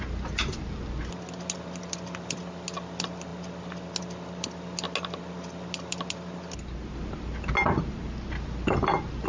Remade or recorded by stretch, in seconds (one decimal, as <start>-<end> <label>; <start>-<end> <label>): 0.0-9.3 recorded

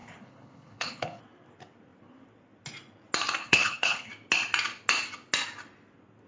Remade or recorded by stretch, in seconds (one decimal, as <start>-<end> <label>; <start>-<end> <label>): 0.0-1.2 remade; 1.2-3.4 recorded; 3.4-4.1 remade; 4.1-6.3 recorded

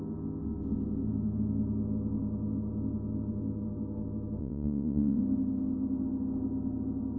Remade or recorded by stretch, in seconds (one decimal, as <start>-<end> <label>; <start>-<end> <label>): 0.0-4.4 recorded; 4.4-5.2 remade; 5.2-7.2 recorded

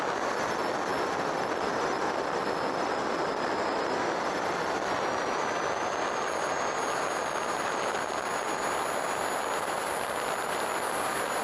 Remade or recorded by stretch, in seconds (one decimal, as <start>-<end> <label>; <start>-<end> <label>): 0.0-11.4 recorded

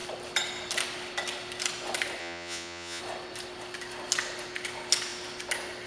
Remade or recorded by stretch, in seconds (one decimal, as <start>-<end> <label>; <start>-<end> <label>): 0.0-2.2 recorded; 2.2-3.0 remade; 3.0-5.9 recorded

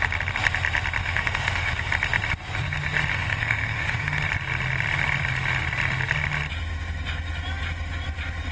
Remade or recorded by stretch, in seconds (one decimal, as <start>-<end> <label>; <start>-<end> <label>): 0.0-1.0 recorded; 1.0-1.9 remade; 1.9-3.1 recorded; 3.1-4.2 remade; 4.2-8.5 recorded

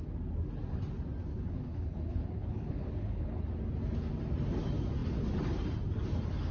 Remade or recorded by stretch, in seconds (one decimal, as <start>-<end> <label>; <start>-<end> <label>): 0.0-1.3 recorded; 1.3-3.5 remade; 3.5-6.5 recorded

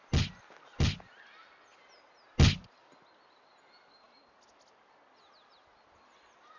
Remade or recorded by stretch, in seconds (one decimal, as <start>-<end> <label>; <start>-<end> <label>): 0.0-6.6 recorded